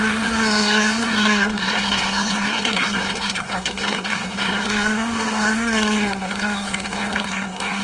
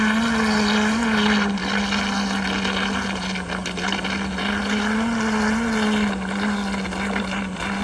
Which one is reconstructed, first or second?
first